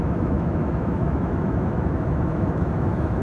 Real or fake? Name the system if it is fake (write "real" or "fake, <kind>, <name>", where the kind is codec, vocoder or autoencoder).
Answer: fake, autoencoder, DAC-VAE